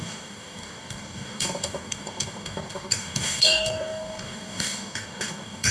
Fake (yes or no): yes